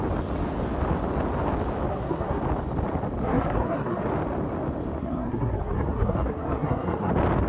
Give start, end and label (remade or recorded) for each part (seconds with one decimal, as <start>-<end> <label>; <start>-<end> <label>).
0.0-1.9 recorded; 1.9-2.4 remade; 2.4-3.2 recorded; 3.2-4.0 remade; 4.0-5.0 recorded; 5.0-7.1 remade; 7.1-7.5 recorded

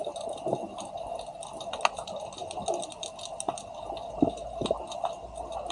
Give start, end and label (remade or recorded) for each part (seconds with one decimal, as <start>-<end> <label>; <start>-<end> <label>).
0.0-5.7 recorded